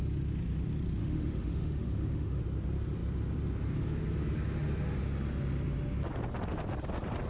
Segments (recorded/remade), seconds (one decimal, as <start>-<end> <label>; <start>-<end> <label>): 0.0-1.0 recorded; 1.0-2.4 remade; 2.4-7.3 recorded